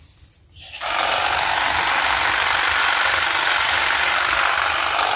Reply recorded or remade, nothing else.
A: remade